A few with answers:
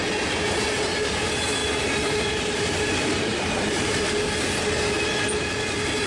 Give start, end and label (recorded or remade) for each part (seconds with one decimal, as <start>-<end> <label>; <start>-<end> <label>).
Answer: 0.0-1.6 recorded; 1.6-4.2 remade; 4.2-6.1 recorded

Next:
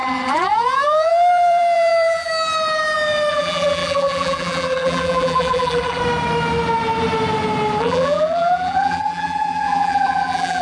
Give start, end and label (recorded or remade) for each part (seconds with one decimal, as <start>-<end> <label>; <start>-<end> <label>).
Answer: 0.0-2.3 remade; 2.3-3.3 recorded; 3.3-6.0 remade; 6.0-7.8 recorded; 7.8-10.6 remade

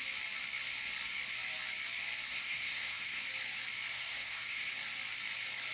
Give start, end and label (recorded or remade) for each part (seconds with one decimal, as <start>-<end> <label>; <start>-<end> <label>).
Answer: 0.0-2.3 recorded; 2.3-3.2 remade; 3.2-3.9 recorded; 3.9-4.7 remade; 4.7-5.7 recorded

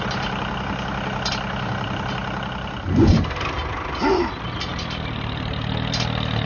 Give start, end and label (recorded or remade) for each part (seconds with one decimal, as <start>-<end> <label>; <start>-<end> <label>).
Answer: 0.0-6.5 recorded

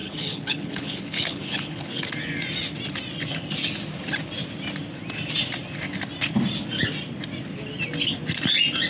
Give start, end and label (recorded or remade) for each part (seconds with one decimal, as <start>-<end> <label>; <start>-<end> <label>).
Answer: 0.0-2.1 remade; 2.1-8.9 recorded

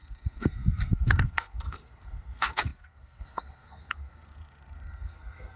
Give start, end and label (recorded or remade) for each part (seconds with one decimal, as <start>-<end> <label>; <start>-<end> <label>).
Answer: 0.0-5.6 remade

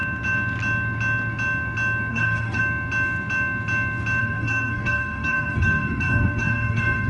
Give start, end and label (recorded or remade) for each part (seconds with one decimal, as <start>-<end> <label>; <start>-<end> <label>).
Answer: 0.0-2.1 recorded; 2.1-2.6 remade; 2.6-4.2 recorded; 4.2-7.1 remade